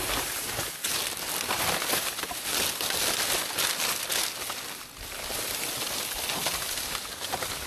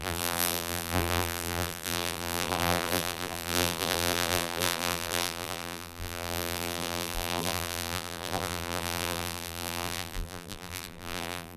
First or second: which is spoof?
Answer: second